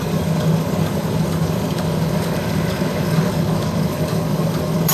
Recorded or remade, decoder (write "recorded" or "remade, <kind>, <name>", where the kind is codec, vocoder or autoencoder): remade, codec, DAC